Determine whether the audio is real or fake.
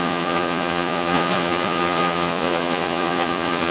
fake